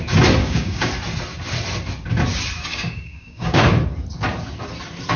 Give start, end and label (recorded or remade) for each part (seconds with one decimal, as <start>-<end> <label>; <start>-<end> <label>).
0.0-0.4 recorded; 0.4-0.9 remade; 0.9-2.7 recorded; 2.7-3.6 remade; 3.6-5.2 recorded